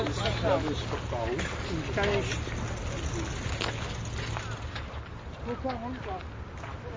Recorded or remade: recorded